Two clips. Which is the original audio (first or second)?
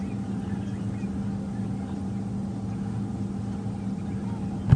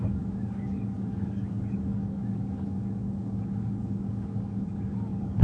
first